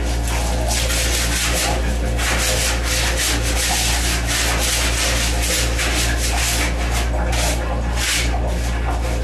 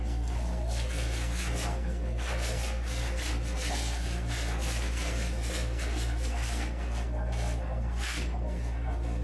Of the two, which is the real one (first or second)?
first